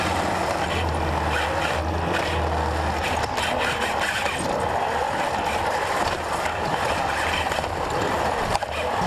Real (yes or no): yes